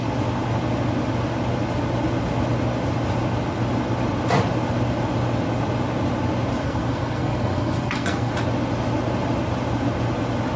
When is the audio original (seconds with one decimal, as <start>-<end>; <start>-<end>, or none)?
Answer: 0.0-6.6; 8.3-10.6